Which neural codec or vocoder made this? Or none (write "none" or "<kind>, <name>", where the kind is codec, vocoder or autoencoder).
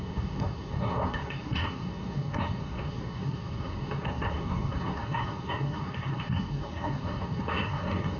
codec, SNAC